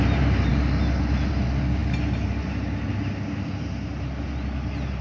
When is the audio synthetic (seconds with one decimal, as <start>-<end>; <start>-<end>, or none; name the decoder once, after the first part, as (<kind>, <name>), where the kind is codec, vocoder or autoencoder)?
none